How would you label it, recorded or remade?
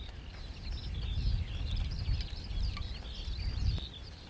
recorded